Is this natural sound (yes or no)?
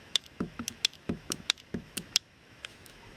no